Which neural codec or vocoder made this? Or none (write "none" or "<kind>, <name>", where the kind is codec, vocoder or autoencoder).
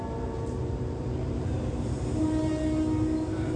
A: vocoder, BigVGAN v2